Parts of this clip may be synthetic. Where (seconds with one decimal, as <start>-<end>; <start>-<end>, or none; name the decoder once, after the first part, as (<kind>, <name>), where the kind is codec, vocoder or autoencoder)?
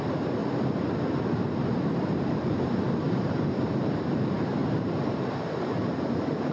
0.0-0.4 (vocoder, BigVGAN v2); 1.6-6.5